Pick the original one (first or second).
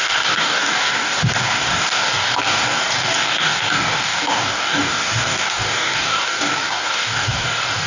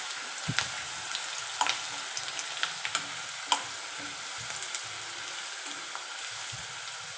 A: second